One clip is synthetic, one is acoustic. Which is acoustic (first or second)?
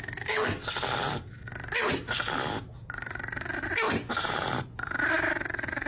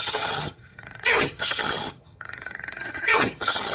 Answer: first